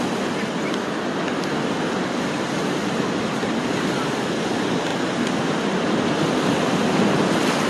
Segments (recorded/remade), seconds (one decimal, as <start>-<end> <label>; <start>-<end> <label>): 0.0-7.7 recorded